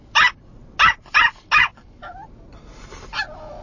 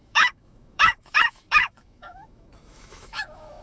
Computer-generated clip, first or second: second